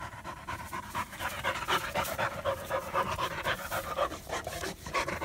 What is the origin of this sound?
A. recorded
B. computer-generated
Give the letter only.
B